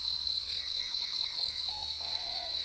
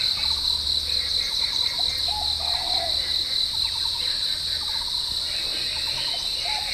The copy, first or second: first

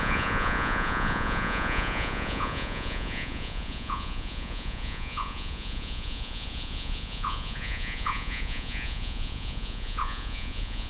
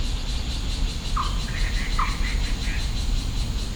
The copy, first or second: first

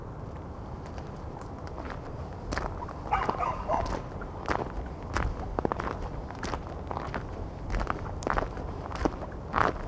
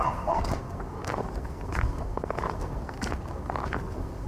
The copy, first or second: second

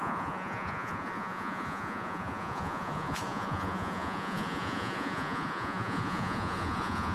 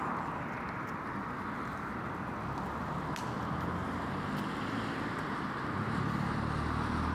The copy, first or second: first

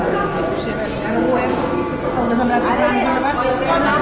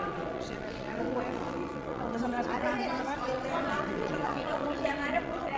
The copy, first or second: second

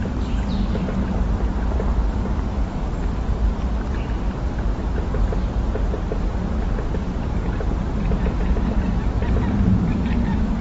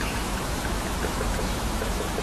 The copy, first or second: second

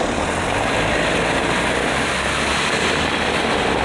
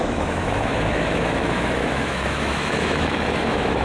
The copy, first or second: second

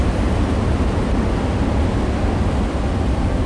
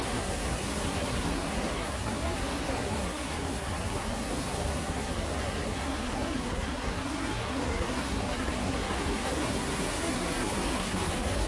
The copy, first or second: second